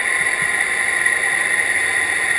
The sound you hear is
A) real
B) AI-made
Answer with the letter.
A